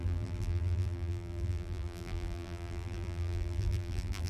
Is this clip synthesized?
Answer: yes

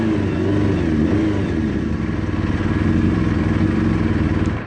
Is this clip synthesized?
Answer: no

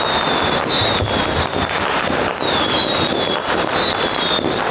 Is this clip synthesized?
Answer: no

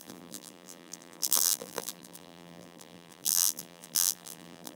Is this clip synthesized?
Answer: yes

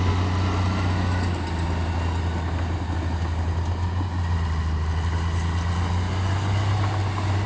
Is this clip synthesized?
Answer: no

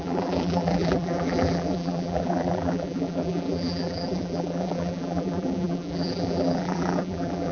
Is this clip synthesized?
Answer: yes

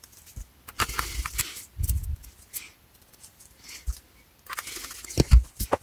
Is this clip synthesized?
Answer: no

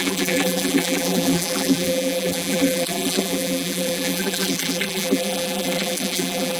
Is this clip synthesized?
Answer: yes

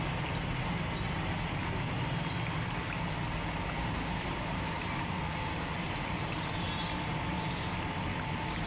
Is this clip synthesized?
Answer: no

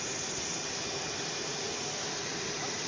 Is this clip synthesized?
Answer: yes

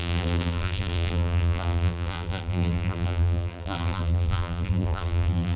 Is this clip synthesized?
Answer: yes